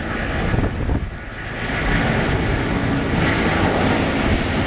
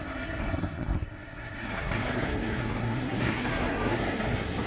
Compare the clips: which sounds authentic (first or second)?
first